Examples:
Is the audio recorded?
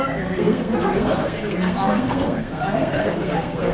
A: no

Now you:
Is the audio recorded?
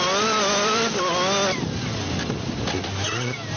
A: yes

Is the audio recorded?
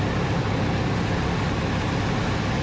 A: yes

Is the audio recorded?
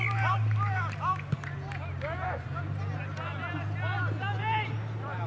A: yes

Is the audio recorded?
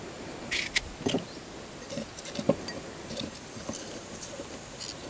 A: yes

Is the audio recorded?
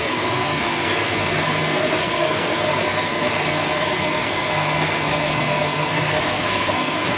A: no